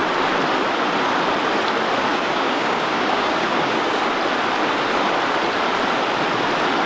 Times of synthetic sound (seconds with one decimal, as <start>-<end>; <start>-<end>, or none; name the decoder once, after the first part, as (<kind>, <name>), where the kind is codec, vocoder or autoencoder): 2.1-4.1 (codec, DAC)